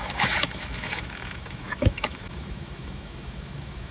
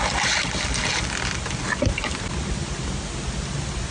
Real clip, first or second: second